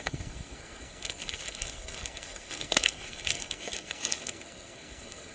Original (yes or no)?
no